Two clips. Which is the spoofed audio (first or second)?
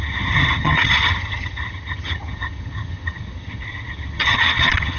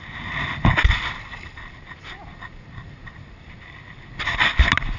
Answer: first